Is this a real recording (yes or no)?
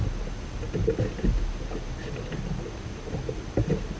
yes